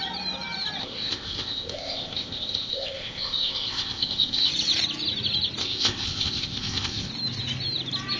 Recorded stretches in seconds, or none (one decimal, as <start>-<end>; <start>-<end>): 0.0-0.8; 4.5-5.6; 7.1-8.2